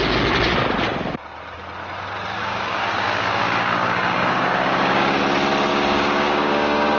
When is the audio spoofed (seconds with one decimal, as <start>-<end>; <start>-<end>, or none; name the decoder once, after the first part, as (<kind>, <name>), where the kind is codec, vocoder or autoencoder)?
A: 2.4-5.2 (codec, DAC); 5.7-7.0